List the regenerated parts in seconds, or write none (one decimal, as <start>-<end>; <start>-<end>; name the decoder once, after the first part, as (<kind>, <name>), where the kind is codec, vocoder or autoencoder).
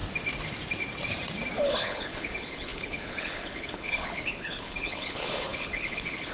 1.6-6.3 (codec, HILCodec)